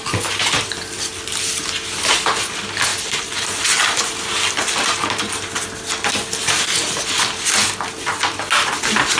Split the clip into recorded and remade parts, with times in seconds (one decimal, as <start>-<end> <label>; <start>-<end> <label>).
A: 0.0-9.2 recorded